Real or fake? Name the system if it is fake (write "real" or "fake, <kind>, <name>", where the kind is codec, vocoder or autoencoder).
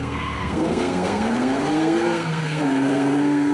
fake, codec, SNAC